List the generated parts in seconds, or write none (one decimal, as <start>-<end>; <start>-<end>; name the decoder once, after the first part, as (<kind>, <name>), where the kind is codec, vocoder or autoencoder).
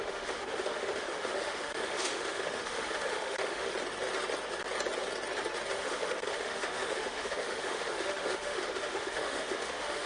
0.0-3.7 (autoencoder, DAC-VAE); 5.7-10.1